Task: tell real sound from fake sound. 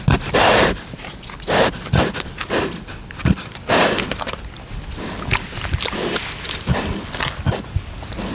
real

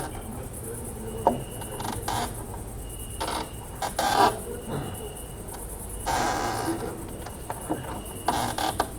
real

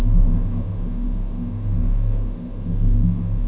fake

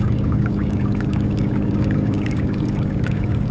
fake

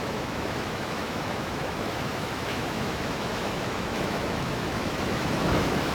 fake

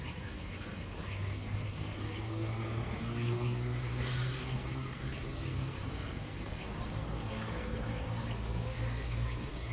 fake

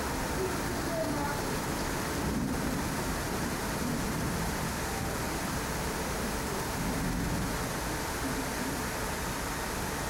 real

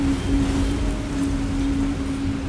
real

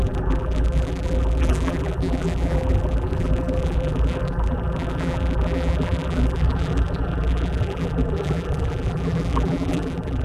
fake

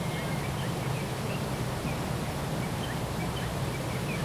real